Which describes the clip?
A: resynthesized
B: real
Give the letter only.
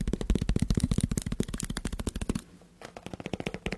B